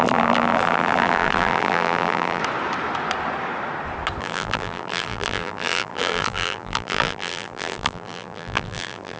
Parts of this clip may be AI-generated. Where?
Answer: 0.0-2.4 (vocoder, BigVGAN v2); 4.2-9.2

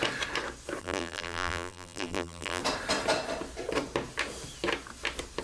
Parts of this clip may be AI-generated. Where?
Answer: 0.8-2.6 (vocoder, BigVGAN v2)